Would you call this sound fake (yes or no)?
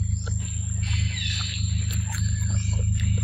no